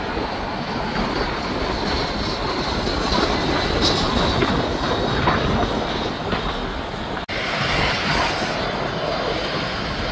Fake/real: real